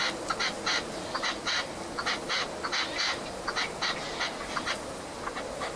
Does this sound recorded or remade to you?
recorded